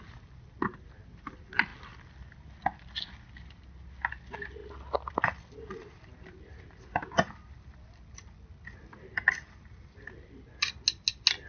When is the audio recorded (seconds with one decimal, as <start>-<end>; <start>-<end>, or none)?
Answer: 0.0-11.5